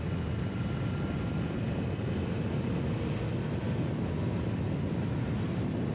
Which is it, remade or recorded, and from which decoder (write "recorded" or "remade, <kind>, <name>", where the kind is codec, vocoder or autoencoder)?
recorded